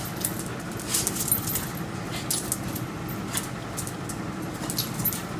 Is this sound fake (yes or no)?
no